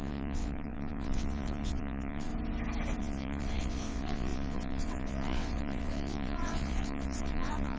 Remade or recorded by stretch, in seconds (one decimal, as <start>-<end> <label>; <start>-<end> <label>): 0.0-2.3 remade; 2.3-3.0 recorded; 3.0-7.8 remade